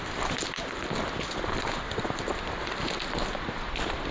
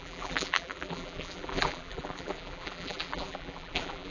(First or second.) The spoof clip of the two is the second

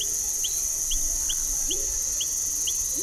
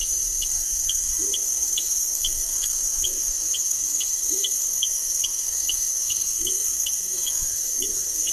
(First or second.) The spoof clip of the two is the second